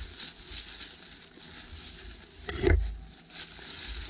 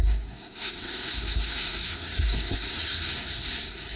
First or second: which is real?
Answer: first